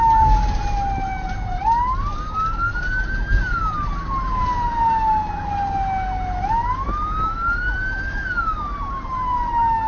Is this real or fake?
real